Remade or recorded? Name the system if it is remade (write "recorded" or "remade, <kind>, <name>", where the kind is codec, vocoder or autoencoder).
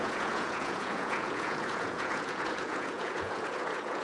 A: remade, vocoder, Vocos